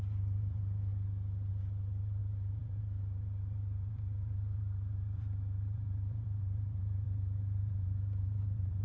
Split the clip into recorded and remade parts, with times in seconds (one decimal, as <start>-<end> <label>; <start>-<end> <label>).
0.0-0.9 remade; 0.9-1.5 recorded; 1.5-8.8 remade